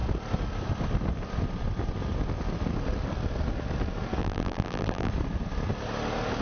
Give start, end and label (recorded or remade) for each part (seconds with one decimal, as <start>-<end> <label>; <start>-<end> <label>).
0.0-4.2 recorded; 4.2-5.1 remade; 5.1-6.4 recorded